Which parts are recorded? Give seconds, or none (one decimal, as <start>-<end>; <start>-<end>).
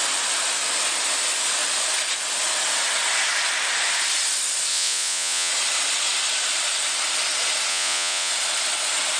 0.0-4.7; 5.5-7.7; 8.3-9.2